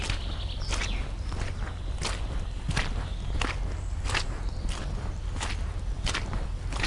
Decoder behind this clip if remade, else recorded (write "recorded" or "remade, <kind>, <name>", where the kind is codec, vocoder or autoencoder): recorded